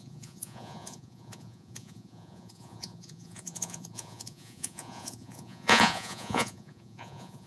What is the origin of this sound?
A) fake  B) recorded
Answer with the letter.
A